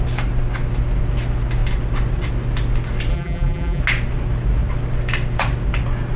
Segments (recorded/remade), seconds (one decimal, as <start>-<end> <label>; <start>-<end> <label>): 0.0-3.1 recorded; 3.1-3.8 remade; 3.8-6.2 recorded